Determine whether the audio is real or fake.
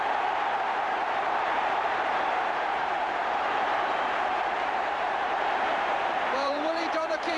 fake